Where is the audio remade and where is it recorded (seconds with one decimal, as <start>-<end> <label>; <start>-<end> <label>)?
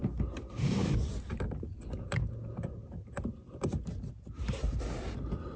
0.0-5.6 recorded